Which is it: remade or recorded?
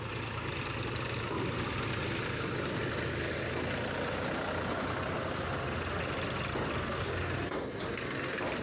recorded